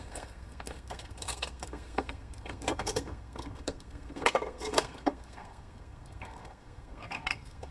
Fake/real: fake